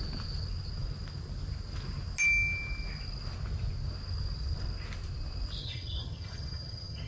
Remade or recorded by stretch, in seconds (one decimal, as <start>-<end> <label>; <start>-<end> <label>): 0.0-5.6 recorded; 5.6-7.1 remade